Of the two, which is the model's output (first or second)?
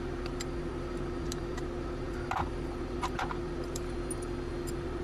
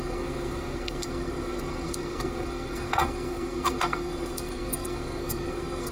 second